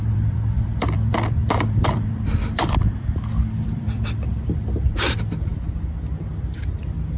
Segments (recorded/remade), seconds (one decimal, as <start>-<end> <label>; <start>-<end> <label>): 0.0-7.2 remade